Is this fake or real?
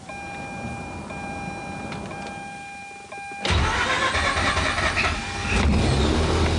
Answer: real